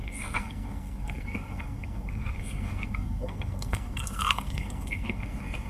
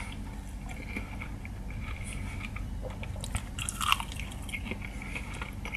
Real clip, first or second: second